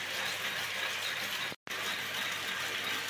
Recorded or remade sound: recorded